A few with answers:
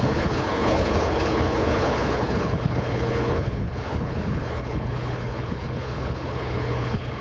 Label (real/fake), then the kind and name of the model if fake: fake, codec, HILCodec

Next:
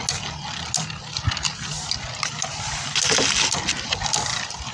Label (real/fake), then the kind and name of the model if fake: real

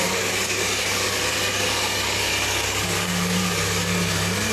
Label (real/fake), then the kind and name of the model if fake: fake, codec, DAC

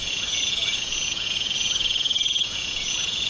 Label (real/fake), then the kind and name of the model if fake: fake, vocoder, Vocos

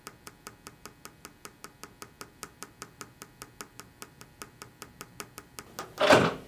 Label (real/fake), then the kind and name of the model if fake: real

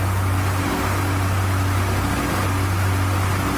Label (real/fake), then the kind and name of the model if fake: real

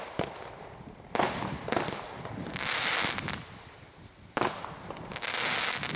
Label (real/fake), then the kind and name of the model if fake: real